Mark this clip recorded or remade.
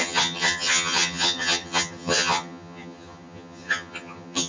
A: remade